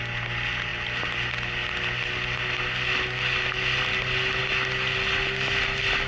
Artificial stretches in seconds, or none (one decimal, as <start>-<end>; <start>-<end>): none